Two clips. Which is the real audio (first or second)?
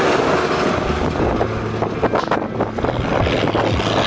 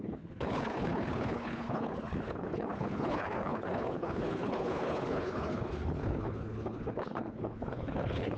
first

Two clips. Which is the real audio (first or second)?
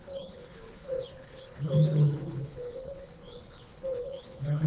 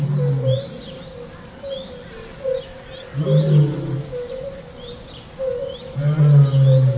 second